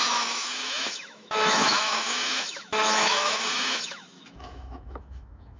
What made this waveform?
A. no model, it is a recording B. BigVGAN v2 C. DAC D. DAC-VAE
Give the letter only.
D